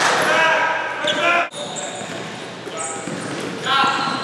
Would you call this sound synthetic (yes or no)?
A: no